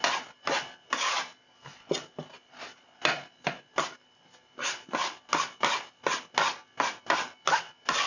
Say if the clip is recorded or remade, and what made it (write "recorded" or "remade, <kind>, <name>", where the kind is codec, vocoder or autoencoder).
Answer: recorded